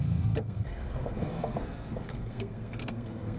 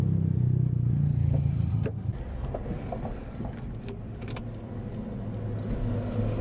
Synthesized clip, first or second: first